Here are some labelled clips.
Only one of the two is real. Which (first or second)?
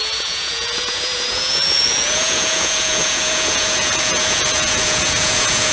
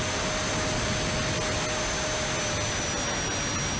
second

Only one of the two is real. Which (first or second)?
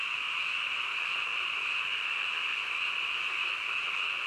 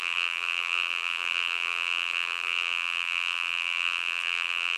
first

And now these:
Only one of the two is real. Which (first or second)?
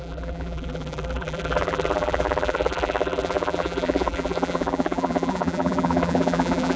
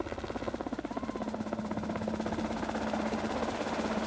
second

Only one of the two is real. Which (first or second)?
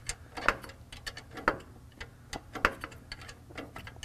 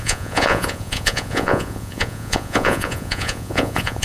first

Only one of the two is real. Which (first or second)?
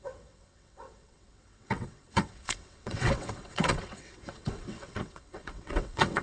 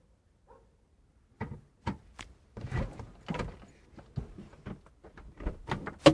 second